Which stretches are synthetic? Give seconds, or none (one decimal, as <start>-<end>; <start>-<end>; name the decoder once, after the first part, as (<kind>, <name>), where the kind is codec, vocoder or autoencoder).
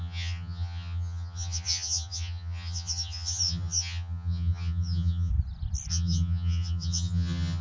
0.0-5.3 (vocoder, HiFi-GAN); 5.9-7.6